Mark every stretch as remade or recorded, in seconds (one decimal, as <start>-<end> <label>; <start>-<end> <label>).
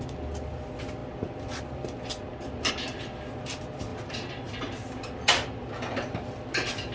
0.0-6.9 recorded